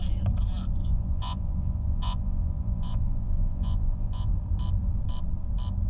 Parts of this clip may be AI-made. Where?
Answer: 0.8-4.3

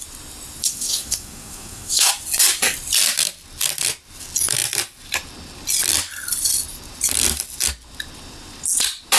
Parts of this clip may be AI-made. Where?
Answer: 0.6-2.1

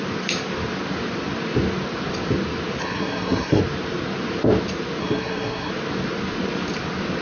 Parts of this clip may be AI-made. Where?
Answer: 2.8-3.6; 5.0-5.7

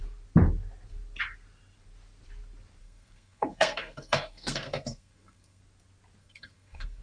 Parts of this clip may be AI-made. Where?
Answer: 2.8-5.6; 6.2-7.0

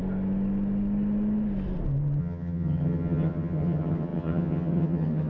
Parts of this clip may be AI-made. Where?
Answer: 2.2-5.3